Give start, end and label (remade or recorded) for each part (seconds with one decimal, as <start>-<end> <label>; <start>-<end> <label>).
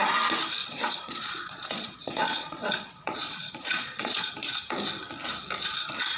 0.0-0.6 recorded; 0.6-4.3 remade; 4.3-6.2 recorded